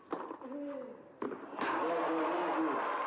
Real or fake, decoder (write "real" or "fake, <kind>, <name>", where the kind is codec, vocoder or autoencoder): real